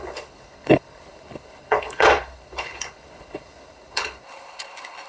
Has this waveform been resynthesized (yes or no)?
yes